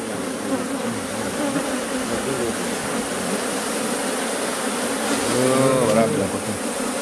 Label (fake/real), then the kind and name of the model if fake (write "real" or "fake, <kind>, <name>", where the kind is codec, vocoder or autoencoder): real